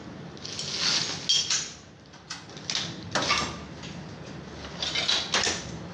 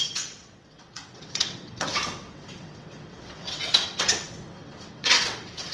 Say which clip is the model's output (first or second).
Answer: second